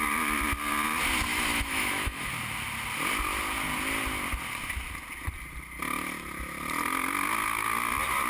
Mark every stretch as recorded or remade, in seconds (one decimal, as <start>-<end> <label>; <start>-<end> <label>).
0.0-1.3 recorded; 1.3-2.3 remade; 2.3-8.3 recorded